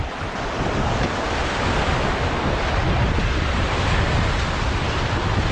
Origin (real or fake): real